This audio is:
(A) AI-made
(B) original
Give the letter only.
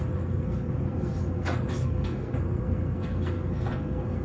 A